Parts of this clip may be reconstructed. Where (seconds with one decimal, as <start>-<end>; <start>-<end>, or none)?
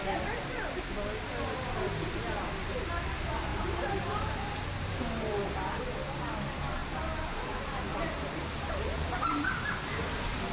3.5-5.0; 6.8-7.4; 7.9-9.6